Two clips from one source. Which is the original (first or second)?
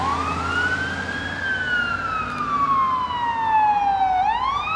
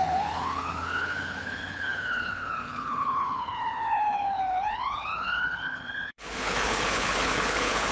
first